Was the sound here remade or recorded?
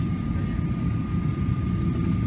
recorded